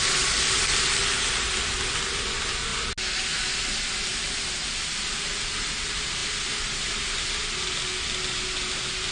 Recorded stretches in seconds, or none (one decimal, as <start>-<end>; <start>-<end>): 0.0-9.1